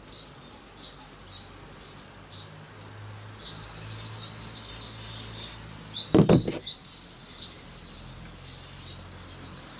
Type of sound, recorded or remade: recorded